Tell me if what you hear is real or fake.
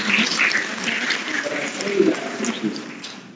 real